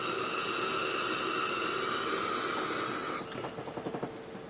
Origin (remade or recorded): recorded